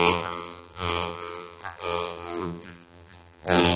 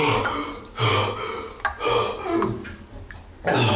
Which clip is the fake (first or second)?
first